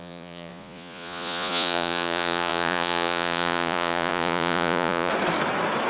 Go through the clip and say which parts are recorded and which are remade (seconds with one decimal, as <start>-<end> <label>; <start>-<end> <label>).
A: 0.0-5.1 remade; 5.1-5.9 recorded